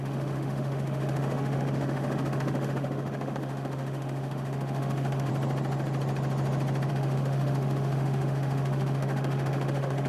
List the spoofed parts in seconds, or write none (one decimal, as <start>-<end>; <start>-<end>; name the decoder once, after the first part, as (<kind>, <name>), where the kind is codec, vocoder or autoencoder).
0.0-5.3 (autoencoder, DAC-VAE); 6.9-10.1